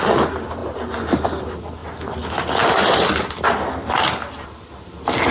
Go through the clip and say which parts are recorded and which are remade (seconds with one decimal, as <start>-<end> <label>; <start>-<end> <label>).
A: 0.0-5.3 recorded